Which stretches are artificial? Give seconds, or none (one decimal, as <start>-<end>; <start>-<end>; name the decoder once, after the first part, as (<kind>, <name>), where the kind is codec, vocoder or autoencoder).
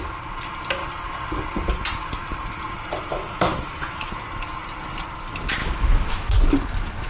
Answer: 3.1-4.1 (autoencoder, DAC-VAE); 5.6-6.3